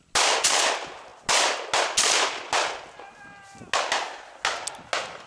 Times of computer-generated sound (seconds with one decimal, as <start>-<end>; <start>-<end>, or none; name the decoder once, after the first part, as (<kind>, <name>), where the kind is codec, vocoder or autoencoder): none